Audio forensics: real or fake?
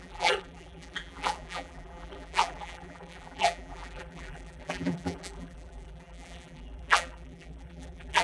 fake